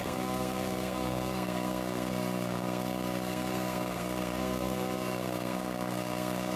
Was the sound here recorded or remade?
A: remade